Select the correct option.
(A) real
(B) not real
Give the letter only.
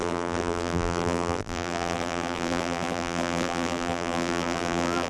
B